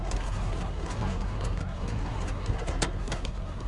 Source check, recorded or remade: remade